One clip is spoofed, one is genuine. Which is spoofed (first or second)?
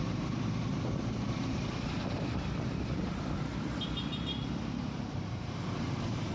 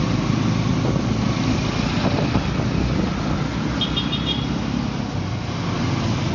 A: first